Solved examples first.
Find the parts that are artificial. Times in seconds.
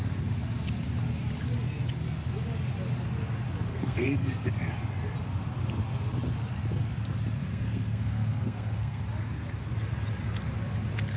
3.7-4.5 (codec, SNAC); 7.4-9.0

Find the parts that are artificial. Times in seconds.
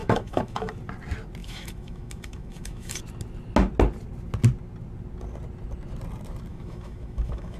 0.0-0.7 (autoencoder, DAC-VAE); 1.4-3.0; 6.5-7.6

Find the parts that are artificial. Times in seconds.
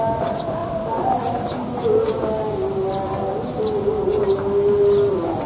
none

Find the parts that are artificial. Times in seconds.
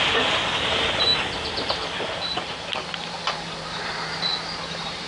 0.0-1.1 (vocoder, BigVGAN v2); 2.9-4.3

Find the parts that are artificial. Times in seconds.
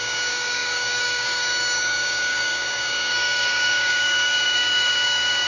0.0-5.5 (codec, DAC)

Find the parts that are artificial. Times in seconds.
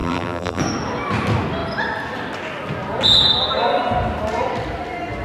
0.0-0.6 (vocoder, BigVGAN v2)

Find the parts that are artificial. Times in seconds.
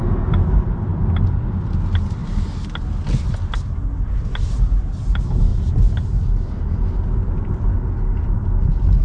none